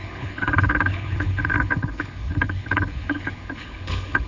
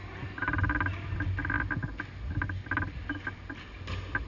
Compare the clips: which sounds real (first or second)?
second